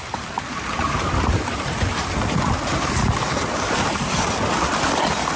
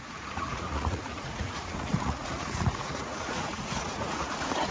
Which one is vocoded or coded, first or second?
second